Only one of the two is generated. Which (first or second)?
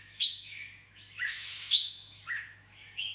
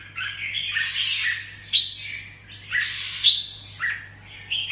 first